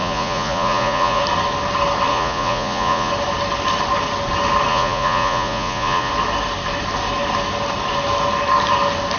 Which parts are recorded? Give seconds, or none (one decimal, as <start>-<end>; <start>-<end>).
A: 1.2-2.1; 3.1-4.7; 6.1-9.2